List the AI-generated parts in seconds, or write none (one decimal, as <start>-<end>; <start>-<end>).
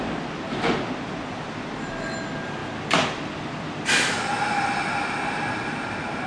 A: 2.6-3.4